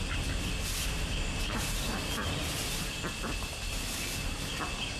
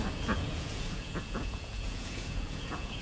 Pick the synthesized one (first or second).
second